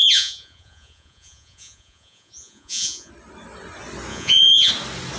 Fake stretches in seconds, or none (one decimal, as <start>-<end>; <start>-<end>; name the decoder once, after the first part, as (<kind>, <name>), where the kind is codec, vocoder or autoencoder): 0.0-3.1 (vocoder, Vocos); 4.1-4.7